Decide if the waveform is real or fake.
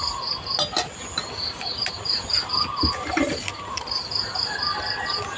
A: real